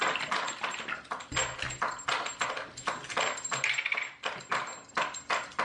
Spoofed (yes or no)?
no